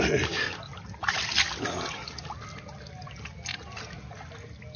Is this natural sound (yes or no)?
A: yes